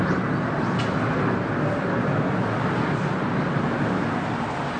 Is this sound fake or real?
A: real